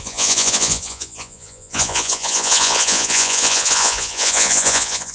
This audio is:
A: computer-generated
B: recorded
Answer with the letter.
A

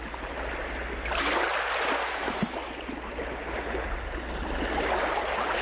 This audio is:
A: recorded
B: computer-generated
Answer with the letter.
A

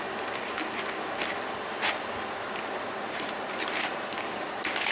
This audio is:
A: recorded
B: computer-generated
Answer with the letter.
A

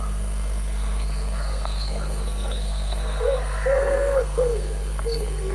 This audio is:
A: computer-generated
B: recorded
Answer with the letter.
A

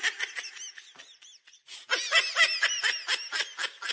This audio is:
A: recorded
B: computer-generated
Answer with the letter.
A